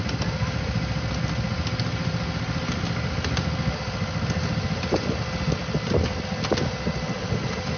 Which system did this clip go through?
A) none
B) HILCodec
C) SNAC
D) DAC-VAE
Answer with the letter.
A